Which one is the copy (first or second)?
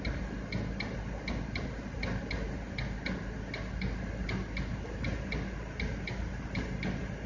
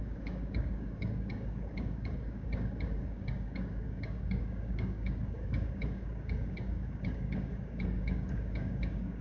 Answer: second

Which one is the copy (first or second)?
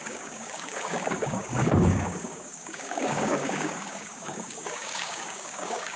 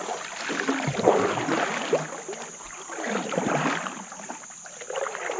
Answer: first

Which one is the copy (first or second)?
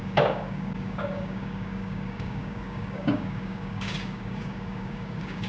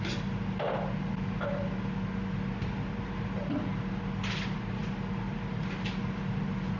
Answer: first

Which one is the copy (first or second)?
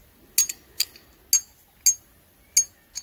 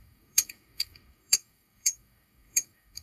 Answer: second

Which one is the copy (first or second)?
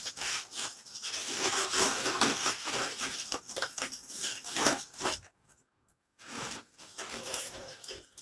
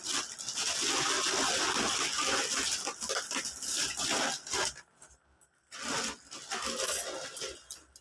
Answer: first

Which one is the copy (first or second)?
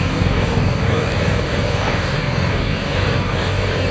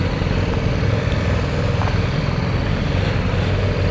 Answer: first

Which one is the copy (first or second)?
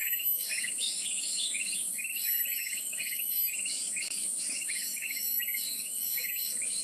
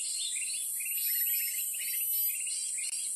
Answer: first